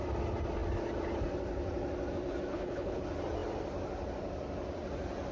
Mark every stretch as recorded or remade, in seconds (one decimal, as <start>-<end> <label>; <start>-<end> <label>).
0.0-2.5 recorded; 2.5-3.0 remade; 3.0-5.3 recorded